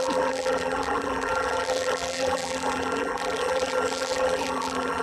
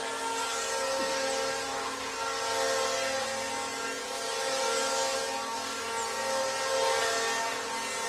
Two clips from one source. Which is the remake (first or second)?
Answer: first